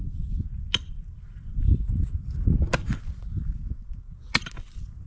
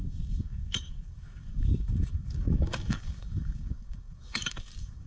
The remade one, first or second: second